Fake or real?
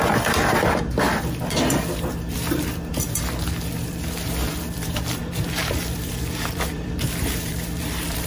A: fake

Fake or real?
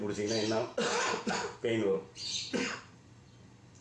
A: fake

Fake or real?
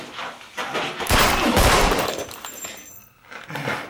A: fake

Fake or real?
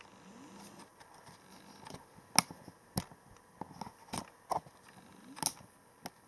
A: real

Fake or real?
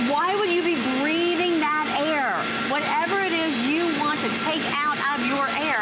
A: real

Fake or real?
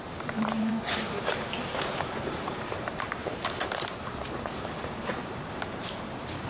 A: fake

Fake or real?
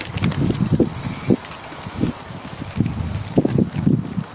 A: real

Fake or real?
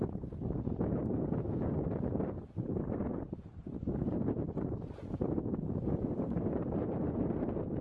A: fake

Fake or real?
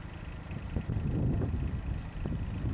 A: real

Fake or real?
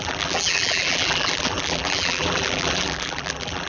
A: fake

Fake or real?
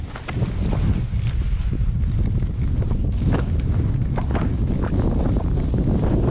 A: real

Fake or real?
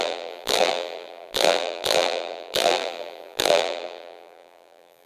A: fake